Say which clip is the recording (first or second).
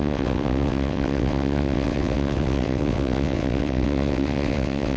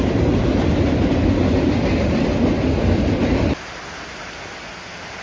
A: second